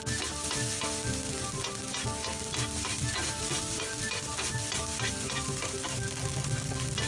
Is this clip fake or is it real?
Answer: real